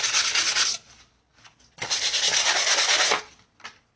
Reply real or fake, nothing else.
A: real